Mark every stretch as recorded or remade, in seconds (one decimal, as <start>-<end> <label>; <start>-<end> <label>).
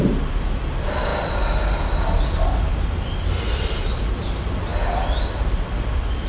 0.0-1.1 remade; 1.1-3.4 recorded; 3.4-6.3 remade